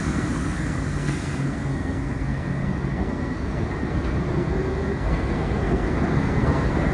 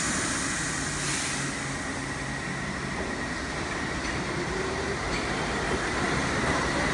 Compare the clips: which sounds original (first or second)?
second